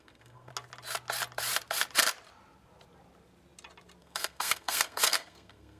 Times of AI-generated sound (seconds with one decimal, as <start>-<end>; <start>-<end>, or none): 0.0-0.5; 4.0-5.8